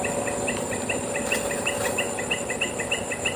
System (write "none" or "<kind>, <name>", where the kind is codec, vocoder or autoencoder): none